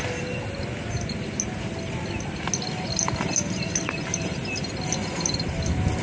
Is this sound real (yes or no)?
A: yes